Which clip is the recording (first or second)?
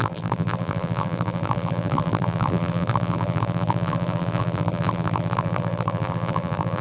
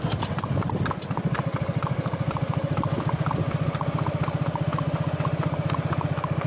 second